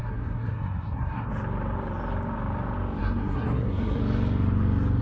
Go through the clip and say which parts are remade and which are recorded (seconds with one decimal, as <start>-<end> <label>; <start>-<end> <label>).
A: 0.0-1.3 remade; 1.3-3.0 recorded; 3.0-4.0 remade; 4.0-5.0 recorded

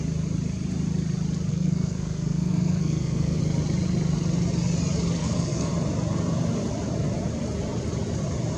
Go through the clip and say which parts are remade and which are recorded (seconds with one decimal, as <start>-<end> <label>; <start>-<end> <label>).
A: 0.0-1.5 recorded; 1.5-3.4 remade; 3.4-5.2 recorded; 5.2-5.7 remade; 5.7-8.6 recorded